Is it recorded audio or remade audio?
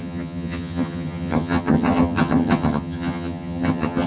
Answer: remade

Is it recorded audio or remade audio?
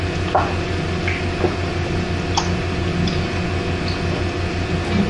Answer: recorded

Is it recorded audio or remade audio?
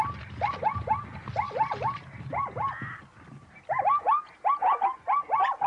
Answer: recorded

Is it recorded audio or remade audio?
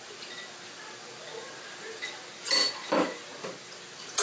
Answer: recorded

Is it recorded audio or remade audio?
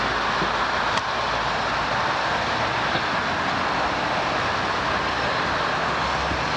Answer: recorded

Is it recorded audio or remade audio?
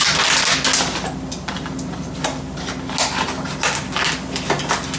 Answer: recorded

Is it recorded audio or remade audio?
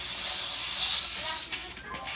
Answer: recorded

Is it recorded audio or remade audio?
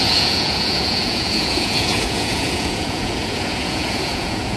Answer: remade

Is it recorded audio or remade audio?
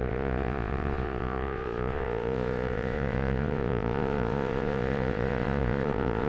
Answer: remade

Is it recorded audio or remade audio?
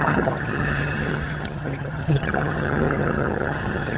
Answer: remade